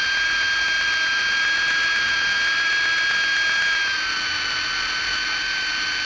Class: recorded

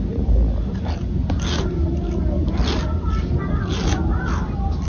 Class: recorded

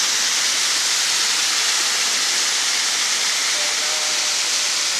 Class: recorded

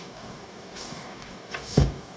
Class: remade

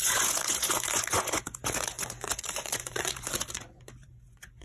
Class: remade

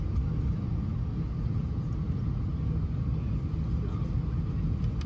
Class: recorded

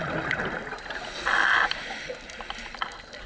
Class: recorded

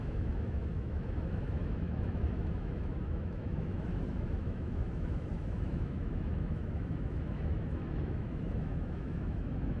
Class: remade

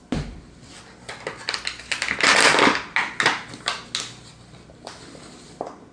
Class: recorded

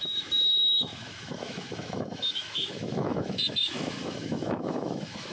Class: remade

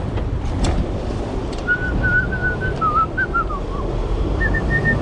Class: remade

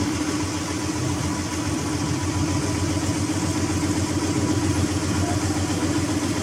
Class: recorded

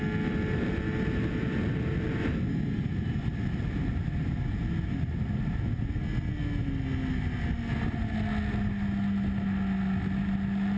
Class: recorded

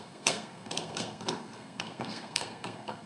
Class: remade